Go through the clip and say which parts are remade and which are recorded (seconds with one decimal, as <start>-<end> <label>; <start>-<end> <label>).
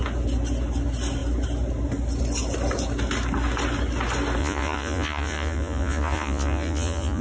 0.0-4.4 recorded; 4.4-7.2 remade